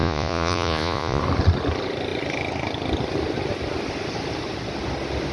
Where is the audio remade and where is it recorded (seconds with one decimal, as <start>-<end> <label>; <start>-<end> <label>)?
0.0-1.2 remade; 1.2-5.3 recorded